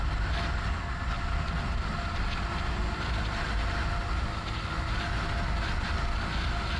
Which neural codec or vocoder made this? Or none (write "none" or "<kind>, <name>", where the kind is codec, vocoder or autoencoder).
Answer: none